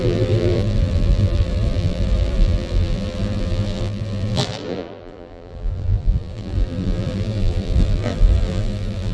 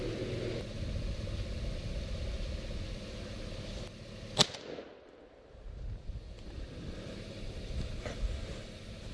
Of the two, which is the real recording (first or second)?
second